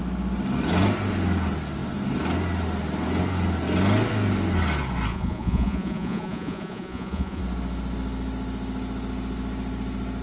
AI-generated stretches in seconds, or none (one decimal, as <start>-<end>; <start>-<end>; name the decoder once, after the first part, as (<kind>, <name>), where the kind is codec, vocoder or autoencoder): 5.1-7.4 (vocoder, Vocos)